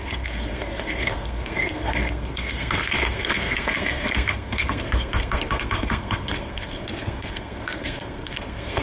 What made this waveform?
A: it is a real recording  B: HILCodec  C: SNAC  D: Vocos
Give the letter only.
C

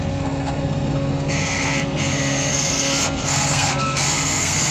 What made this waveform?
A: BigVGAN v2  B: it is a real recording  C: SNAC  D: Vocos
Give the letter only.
C